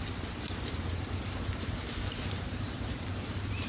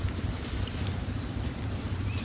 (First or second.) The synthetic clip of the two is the second